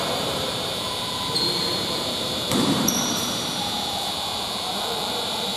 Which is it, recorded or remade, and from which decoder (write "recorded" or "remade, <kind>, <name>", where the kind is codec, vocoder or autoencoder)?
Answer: remade, vocoder, BigVGAN v2